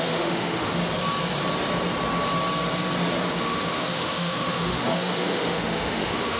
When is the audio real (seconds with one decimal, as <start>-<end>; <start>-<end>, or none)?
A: 0.8-3.4